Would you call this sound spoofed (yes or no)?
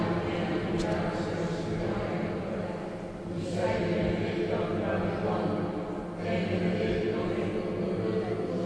no